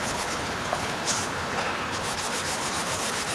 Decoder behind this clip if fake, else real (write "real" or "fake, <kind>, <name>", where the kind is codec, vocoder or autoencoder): fake, codec, HILCodec